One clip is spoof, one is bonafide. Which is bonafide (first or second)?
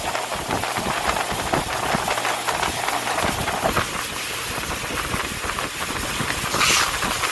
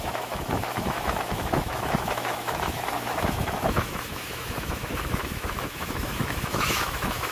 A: first